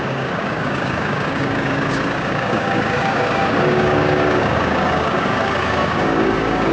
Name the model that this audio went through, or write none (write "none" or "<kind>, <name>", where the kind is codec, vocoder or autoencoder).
codec, DAC